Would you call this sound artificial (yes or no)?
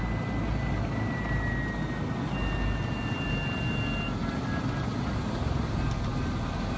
no